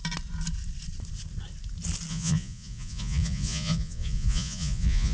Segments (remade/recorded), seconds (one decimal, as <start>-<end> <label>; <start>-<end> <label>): 0.0-2.1 recorded; 2.1-5.1 remade